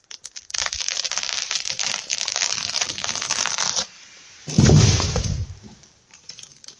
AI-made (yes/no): yes